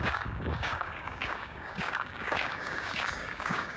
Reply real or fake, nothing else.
fake